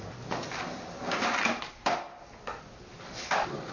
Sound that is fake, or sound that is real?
real